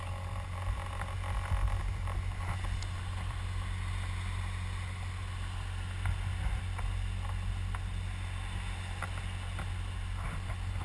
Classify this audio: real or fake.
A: real